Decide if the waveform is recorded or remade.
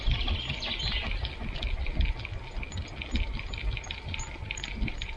recorded